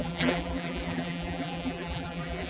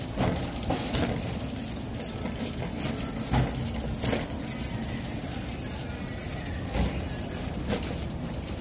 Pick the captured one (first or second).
second